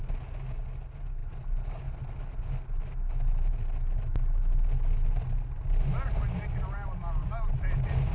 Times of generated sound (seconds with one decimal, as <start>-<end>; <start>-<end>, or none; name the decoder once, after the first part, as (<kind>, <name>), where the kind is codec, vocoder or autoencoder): none